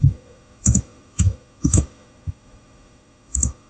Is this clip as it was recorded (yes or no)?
no